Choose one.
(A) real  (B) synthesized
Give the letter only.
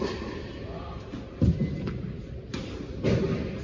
A